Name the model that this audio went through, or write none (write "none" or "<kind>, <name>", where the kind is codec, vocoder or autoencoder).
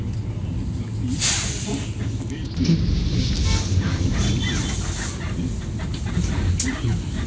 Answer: none